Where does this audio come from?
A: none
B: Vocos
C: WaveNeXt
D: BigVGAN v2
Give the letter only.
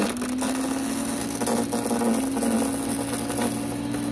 A